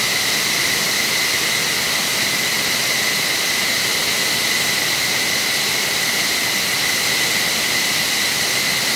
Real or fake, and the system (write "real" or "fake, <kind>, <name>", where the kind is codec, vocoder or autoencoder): real